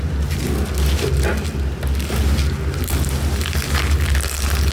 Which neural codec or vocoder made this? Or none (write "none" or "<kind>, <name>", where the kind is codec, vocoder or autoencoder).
none